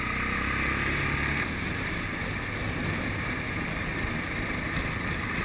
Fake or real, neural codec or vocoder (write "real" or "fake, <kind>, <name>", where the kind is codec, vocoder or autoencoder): real